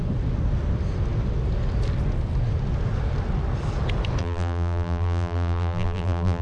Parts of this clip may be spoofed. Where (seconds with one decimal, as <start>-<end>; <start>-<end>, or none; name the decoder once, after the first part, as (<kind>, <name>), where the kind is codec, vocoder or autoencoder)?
4.2-6.4 (vocoder, BigVGAN v2)